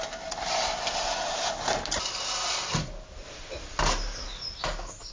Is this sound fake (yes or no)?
no